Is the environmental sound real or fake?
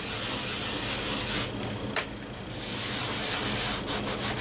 real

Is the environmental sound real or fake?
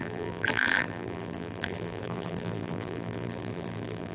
fake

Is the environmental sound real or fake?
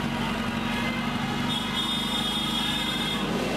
real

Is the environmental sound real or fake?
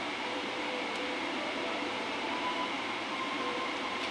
fake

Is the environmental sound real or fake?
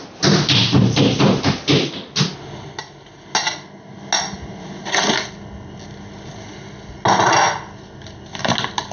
real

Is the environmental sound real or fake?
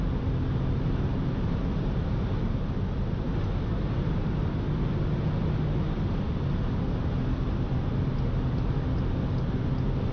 real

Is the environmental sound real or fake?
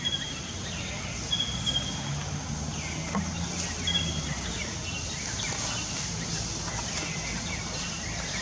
real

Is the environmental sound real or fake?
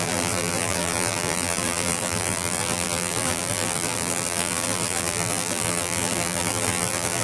fake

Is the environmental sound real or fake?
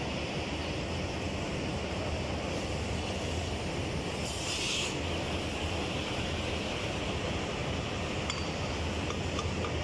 real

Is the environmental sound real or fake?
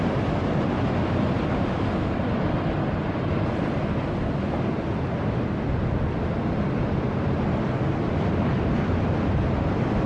real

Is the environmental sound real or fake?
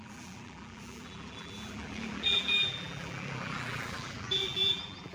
fake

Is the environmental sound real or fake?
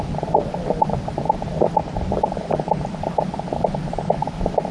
fake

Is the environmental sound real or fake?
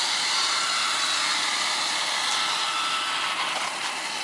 real